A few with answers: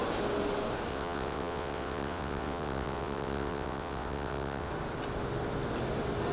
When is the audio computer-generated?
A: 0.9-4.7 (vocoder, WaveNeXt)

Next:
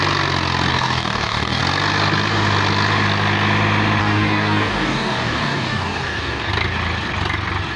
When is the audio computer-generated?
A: 0.7-1.6 (codec, DAC); 4.0-6.5

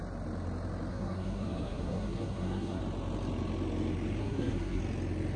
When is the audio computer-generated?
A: 0.9-2.8 (codec, SNAC); 4.2-4.8

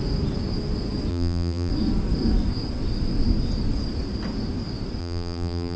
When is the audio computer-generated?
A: 1.1-1.7 (vocoder, BigVGAN v2); 5.0-5.8

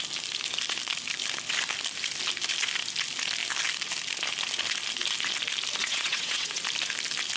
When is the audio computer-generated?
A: 5.8-6.6 (vocoder, WaveNeXt)

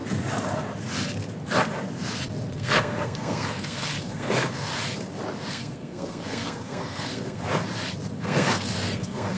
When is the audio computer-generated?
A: 2.5-4.7 (codec, SNAC); 5.5-7.4; 8.2-9.4

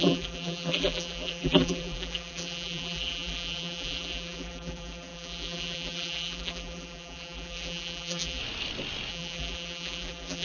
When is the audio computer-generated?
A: 0.0-8.4 (vocoder, BigVGAN v2); 9.1-10.4